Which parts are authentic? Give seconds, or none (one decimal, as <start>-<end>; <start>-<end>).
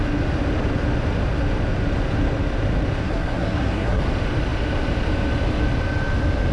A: 0.0-3.0; 4.0-6.5